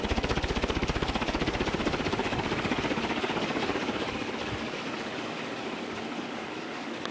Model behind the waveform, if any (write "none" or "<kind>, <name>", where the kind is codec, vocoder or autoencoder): codec, DAC